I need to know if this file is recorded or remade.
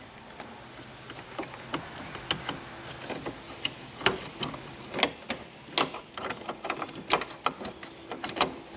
recorded